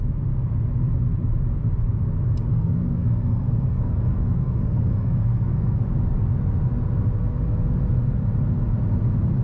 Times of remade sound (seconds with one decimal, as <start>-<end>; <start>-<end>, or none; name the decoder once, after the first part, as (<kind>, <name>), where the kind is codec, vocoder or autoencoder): 2.5-5.8 (codec, SNAC)